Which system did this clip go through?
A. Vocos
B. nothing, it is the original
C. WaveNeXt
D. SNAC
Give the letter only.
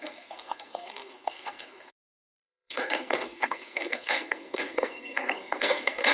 D